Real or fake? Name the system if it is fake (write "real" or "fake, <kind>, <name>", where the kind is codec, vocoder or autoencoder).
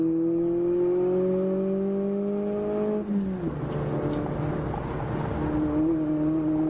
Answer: real